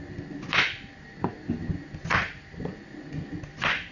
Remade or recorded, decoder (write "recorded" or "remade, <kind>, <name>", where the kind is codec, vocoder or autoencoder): recorded